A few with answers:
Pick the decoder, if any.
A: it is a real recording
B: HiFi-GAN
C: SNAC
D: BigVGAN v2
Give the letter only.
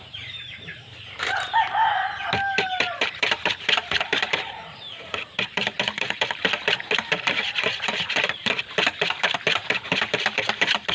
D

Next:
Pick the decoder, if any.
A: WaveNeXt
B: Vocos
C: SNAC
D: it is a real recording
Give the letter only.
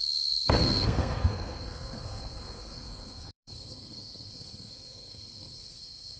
C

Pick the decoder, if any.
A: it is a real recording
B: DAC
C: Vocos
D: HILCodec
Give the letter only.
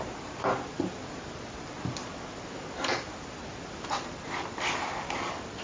A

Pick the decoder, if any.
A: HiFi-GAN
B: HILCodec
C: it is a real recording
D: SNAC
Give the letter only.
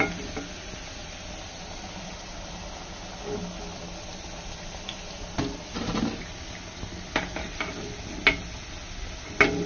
C